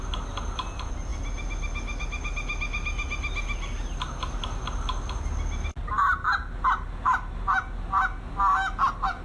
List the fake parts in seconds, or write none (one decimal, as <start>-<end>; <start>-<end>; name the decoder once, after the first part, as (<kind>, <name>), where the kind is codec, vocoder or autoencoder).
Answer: none